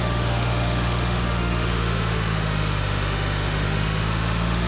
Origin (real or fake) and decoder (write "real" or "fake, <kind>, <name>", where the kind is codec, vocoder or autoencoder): fake, autoencoder, DAC-VAE